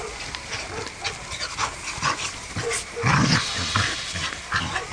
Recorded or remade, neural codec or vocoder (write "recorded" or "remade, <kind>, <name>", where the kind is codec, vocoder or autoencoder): recorded